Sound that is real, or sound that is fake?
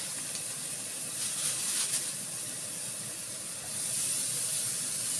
real